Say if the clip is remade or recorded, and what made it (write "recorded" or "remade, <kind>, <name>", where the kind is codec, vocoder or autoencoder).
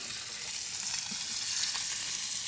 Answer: recorded